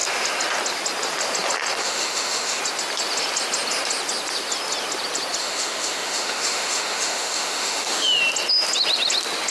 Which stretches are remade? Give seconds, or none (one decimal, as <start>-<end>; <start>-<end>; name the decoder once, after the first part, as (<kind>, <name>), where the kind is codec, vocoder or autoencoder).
1.8-2.6 (autoencoder, DAC-VAE); 5.4-8.2

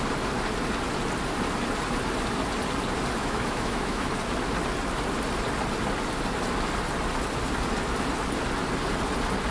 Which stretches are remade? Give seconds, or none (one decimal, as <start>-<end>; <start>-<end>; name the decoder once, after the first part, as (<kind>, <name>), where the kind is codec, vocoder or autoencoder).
3.2-4.1 (autoencoder, DAC-VAE)

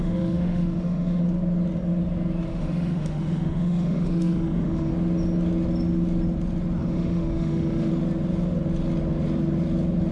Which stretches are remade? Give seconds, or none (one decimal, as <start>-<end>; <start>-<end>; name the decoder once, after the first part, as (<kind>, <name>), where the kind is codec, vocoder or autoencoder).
0.0-1.2 (autoencoder, DAC-VAE); 2.5-4.9; 6.8-7.9

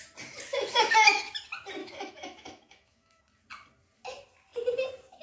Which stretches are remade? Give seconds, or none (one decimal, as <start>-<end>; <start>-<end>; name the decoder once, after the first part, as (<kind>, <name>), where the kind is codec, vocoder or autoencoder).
0.5-1.2 (autoencoder, DAC-VAE); 1.8-3.2

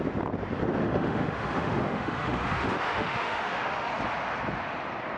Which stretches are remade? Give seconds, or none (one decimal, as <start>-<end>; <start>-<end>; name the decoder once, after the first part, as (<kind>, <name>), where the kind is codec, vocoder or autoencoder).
0.8-3.9 (autoencoder, DAC-VAE)

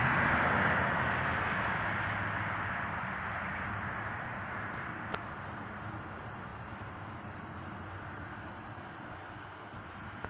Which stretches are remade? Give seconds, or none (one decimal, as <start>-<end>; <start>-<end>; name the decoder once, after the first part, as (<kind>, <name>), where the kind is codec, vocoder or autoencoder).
none